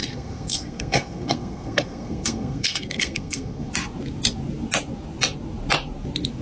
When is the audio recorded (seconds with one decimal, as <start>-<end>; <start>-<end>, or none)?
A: 3.7-6.4

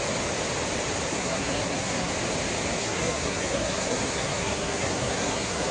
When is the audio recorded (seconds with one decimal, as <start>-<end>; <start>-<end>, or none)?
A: 0.0-1.1; 2.1-2.8